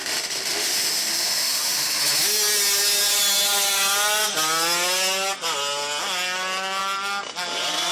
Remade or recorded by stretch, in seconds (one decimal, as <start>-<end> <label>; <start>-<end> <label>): 0.0-2.0 remade; 2.0-7.9 recorded